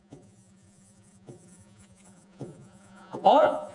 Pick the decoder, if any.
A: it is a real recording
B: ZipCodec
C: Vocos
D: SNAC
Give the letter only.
C